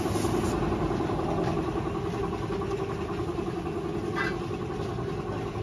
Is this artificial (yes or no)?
no